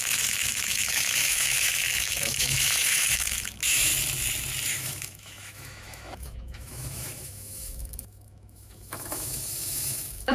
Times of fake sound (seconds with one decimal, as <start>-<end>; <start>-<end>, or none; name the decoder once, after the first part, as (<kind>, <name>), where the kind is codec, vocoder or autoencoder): 0.0-3.9 (autoencoder, DAC-VAE); 4.7-10.3